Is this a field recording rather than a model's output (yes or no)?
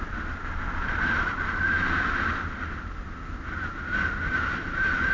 yes